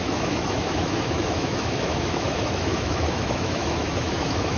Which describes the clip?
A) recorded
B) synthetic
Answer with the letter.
B